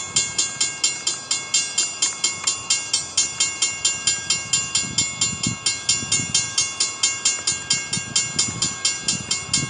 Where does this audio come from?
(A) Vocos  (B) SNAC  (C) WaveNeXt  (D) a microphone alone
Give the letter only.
D